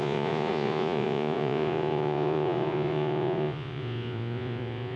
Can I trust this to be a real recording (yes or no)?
no